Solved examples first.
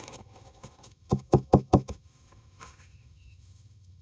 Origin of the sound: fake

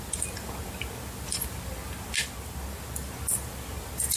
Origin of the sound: real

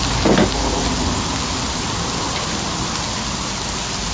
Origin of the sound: real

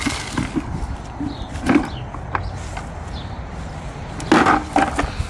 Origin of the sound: real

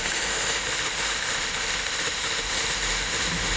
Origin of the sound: fake